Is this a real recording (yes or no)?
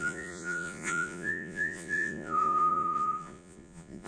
no